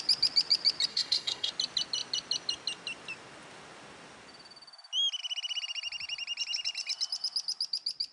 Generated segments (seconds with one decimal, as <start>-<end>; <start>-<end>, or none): 0.9-1.5